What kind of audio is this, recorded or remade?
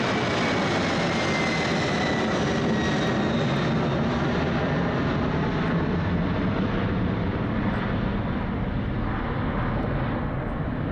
recorded